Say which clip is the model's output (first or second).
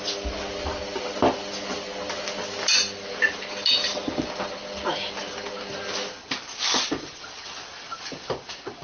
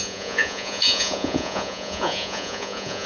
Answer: second